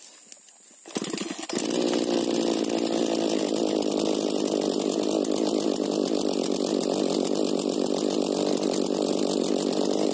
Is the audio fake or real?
real